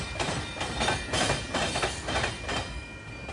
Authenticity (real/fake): real